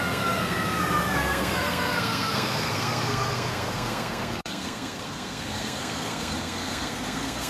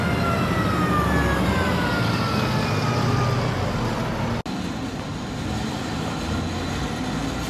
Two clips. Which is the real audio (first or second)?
second